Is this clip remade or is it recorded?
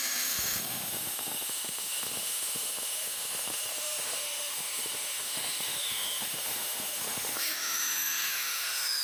remade